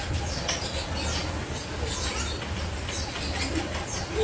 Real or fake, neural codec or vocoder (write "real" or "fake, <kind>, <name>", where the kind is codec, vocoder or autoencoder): real